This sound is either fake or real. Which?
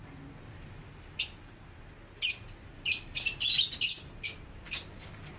real